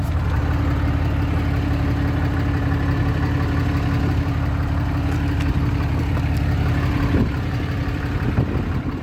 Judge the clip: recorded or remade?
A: recorded